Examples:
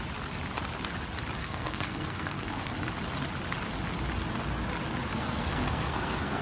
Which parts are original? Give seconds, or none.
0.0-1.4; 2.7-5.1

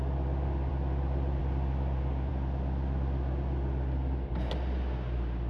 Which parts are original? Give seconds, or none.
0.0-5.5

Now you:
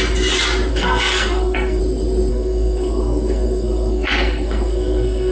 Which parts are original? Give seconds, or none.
0.0-0.7; 1.8-2.3